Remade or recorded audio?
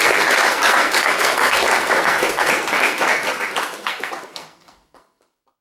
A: remade